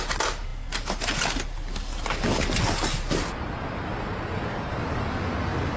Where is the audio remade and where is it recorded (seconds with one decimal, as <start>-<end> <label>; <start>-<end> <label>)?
0.0-5.8 recorded